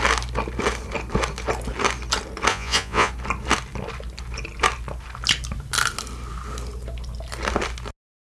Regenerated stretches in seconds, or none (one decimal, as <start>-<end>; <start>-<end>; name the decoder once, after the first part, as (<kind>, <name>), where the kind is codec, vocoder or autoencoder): 2.5-3.1 (vocoder, Vocos)